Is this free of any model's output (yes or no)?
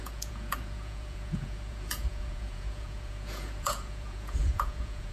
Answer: no